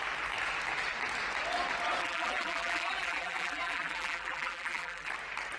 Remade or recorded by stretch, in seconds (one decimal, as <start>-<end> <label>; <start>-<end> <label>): 0.0-2.0 recorded; 2.0-5.1 remade; 5.1-5.6 recorded